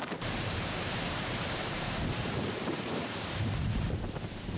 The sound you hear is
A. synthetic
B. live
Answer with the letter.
A